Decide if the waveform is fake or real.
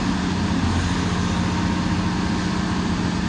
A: real